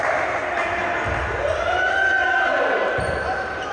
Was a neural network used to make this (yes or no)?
no